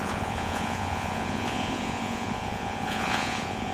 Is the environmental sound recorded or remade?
remade